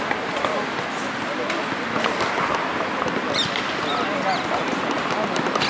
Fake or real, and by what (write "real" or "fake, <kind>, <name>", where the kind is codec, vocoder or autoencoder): real